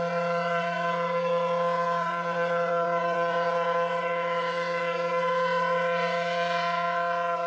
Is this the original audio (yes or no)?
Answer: no